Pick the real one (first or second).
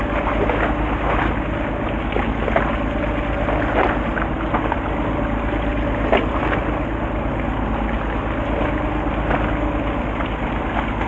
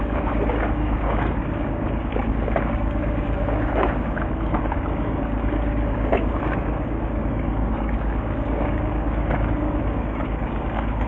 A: first